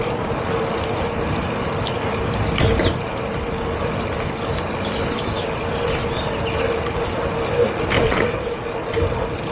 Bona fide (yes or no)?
yes